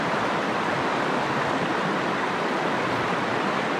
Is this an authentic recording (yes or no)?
yes